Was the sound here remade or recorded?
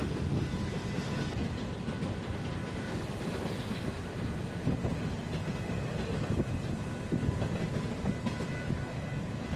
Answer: recorded